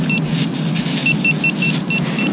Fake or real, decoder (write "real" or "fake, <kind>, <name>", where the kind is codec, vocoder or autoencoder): real